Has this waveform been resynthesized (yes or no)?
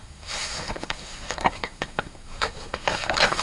yes